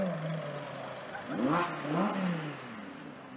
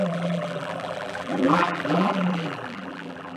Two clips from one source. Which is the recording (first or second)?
first